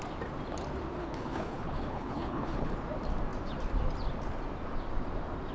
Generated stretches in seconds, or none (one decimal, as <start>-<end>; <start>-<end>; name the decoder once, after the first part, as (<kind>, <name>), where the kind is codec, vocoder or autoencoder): 1.0-2.7 (codec, HILCodec)